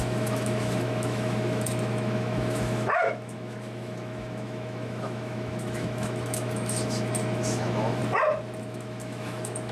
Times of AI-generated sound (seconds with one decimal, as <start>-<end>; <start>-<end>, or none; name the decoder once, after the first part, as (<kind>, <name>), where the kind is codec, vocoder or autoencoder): 0.0-8.0 (autoencoder, DAC-VAE); 8.6-9.7